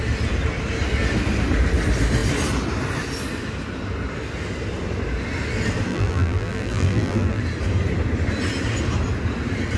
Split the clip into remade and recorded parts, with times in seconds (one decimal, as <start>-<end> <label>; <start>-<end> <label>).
0.0-5.9 recorded; 5.9-7.4 remade; 7.4-9.8 recorded

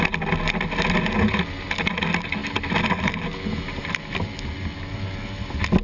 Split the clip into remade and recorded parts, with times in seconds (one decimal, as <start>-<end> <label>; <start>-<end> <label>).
0.0-5.8 recorded

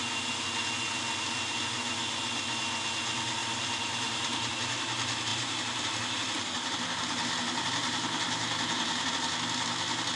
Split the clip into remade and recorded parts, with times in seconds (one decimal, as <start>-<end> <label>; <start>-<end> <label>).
0.0-3.4 recorded; 3.4-4.5 remade; 4.5-5.3 recorded; 5.3-9.1 remade; 9.1-10.2 recorded

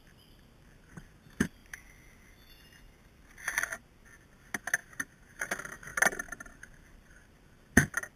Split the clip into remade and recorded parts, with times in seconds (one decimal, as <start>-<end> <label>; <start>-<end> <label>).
0.0-4.8 recorded; 4.8-5.5 remade; 5.5-8.2 recorded

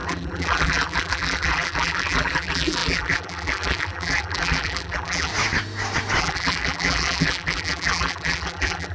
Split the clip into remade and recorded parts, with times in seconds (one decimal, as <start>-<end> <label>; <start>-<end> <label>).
0.0-5.3 remade; 5.3-6.2 recorded; 6.2-8.9 remade

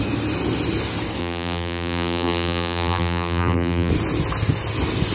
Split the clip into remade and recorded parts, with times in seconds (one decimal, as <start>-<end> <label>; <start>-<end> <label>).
0.0-1.2 recorded; 1.2-3.9 remade; 3.9-5.1 recorded